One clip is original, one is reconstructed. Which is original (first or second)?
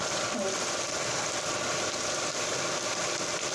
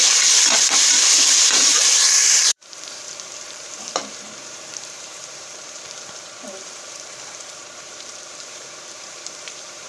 first